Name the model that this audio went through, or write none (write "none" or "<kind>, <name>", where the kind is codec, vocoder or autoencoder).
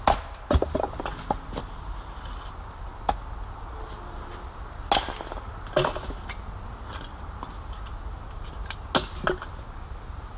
none